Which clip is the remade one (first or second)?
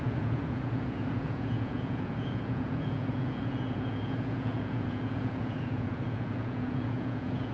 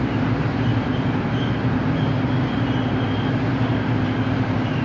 first